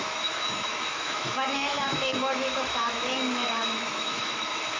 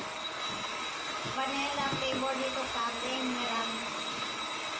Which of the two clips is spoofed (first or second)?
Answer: first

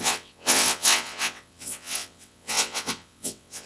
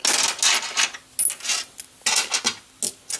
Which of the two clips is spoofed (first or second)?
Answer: first